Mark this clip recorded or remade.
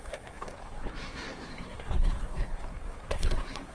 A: remade